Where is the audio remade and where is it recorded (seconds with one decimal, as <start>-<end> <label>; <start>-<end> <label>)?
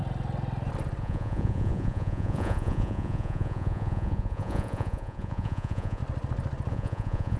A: 0.0-1.0 recorded; 1.0-6.0 remade; 6.0-6.7 recorded; 6.7-7.4 remade